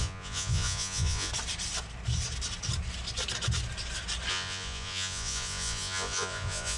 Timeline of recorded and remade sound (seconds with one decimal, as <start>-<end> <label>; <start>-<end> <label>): 0.0-1.3 remade; 1.3-4.3 recorded; 4.3-6.8 remade